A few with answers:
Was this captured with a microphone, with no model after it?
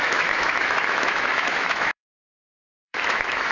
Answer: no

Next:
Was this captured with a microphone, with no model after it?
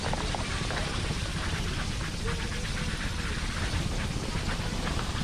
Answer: yes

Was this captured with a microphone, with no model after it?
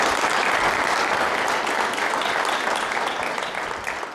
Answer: yes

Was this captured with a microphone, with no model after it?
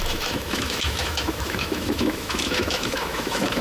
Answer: no